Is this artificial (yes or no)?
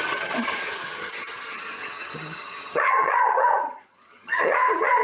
yes